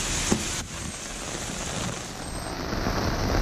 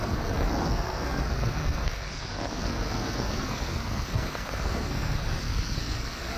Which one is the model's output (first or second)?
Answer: second